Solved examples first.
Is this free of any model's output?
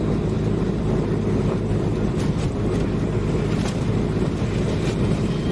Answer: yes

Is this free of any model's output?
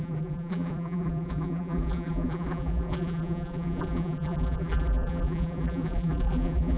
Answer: no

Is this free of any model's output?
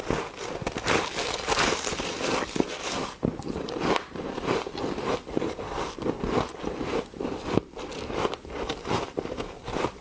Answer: no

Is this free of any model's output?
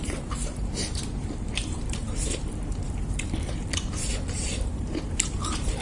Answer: no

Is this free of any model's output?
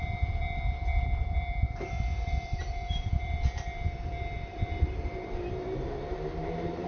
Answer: no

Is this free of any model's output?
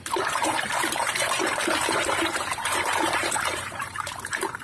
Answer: no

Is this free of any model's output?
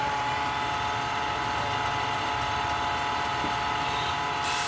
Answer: yes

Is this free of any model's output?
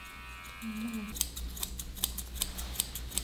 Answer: yes